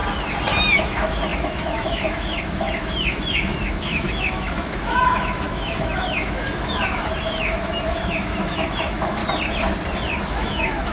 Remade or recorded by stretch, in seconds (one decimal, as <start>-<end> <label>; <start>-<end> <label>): 0.0-0.8 recorded; 0.8-9.2 remade; 9.2-10.2 recorded; 10.2-10.9 remade